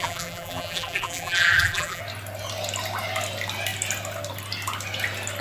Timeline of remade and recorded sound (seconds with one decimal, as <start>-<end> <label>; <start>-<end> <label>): 0.0-2.0 remade; 2.0-5.4 recorded